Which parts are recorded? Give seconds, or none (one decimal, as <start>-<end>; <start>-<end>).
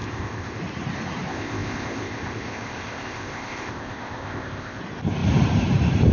0.6-1.3; 4.8-6.1